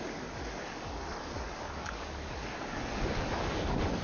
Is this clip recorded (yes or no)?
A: no